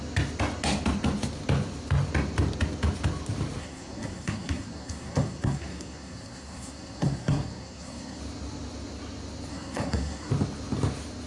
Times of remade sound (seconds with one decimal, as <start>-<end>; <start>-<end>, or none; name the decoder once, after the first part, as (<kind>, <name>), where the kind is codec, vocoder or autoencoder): 3.6-8.2 (codec, SNAC); 9.5-10.3